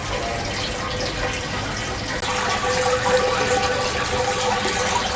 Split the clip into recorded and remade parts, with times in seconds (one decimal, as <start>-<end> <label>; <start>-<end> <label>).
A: 0.0-5.2 recorded